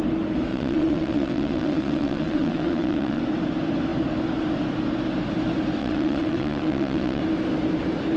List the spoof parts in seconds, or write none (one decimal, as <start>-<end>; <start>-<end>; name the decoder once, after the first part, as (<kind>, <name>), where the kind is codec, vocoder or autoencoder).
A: 0.5-3.2 (vocoder, WaveNeXt); 5.8-7.2